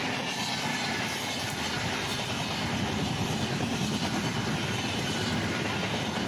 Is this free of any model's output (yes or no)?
yes